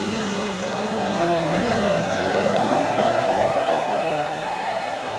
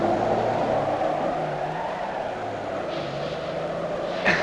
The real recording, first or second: second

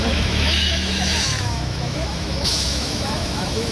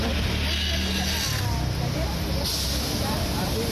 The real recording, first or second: second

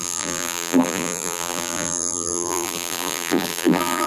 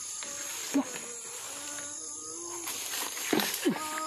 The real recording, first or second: second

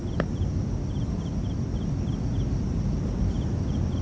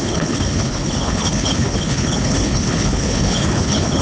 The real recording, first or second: first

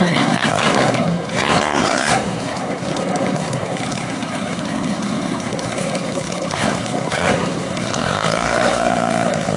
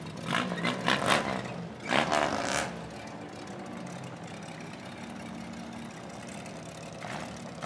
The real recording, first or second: second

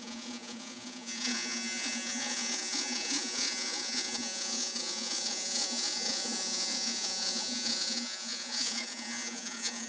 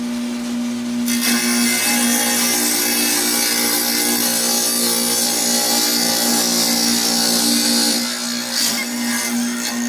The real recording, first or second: second